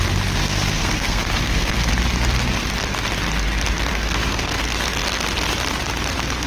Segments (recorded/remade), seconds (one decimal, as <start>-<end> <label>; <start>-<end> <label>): 0.0-0.4 recorded; 0.4-1.9 remade; 1.9-3.9 recorded; 3.9-4.6 remade; 4.6-6.5 recorded